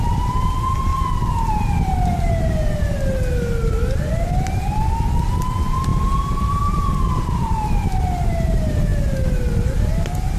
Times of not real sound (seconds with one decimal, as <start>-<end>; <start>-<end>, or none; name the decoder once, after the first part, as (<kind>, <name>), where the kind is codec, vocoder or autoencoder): 5.9-7.7 (vocoder, BigVGAN v2)